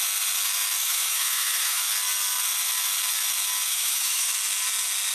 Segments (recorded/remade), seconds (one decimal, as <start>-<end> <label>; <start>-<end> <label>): 0.0-0.8 recorded; 0.8-1.8 remade; 1.8-3.7 recorded; 3.7-4.3 remade; 4.3-5.1 recorded